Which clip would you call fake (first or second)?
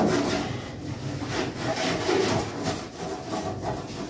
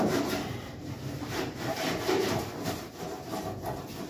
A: second